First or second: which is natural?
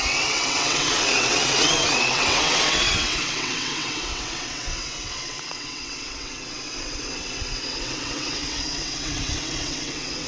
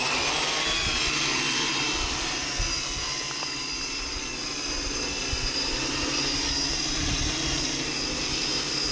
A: second